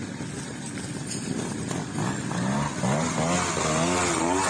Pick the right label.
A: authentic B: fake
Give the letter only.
A